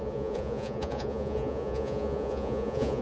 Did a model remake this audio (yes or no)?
yes